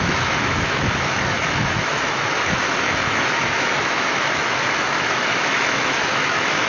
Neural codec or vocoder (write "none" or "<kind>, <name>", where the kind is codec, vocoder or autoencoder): autoencoder, DAC-VAE